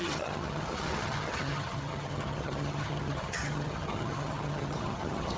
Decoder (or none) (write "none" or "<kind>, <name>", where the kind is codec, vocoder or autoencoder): vocoder, HiFi-GAN